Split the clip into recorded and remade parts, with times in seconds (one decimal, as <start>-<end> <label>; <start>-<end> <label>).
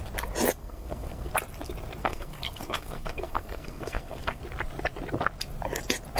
0.0-0.6 recorded; 0.6-1.3 remade; 1.3-2.0 recorded; 2.0-4.4 remade; 4.4-6.2 recorded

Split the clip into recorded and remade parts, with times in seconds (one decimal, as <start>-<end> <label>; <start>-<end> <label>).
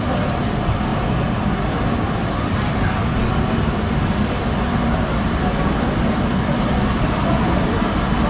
0.0-8.3 recorded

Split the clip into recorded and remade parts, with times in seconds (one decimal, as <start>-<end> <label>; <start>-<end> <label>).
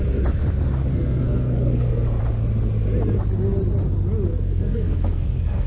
0.0-0.9 recorded; 0.9-2.2 remade; 2.2-4.3 recorded; 4.3-5.7 remade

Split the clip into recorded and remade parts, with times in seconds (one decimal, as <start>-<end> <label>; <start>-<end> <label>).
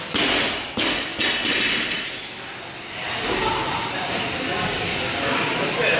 0.0-6.0 recorded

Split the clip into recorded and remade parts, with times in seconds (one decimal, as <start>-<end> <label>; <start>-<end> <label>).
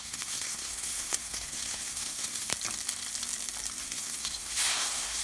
0.0-2.5 remade; 2.5-3.8 recorded; 3.8-5.2 remade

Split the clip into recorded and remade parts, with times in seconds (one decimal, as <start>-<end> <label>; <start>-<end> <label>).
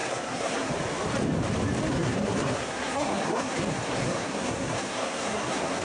0.0-0.7 remade; 0.7-1.9 recorded; 1.9-5.8 remade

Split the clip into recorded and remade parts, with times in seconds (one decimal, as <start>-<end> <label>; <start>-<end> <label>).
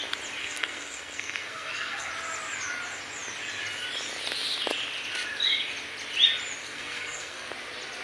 0.0-0.4 recorded; 0.4-2.1 remade; 2.1-6.6 recorded; 6.6-7.5 remade; 7.5-8.0 recorded